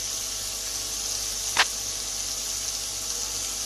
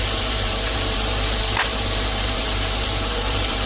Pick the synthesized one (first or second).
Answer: second